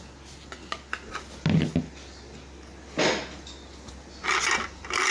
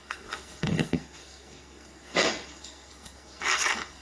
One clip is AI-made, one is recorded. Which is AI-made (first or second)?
second